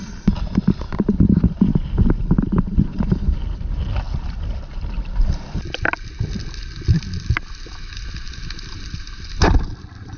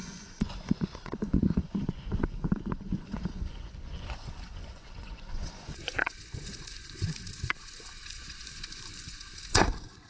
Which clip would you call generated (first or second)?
second